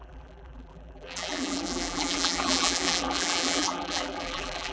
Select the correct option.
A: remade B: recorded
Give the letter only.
A